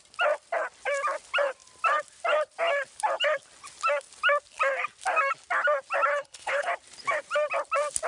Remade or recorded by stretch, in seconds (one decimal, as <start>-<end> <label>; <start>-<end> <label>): 0.0-6.1 recorded; 6.1-6.7 remade; 6.7-8.1 recorded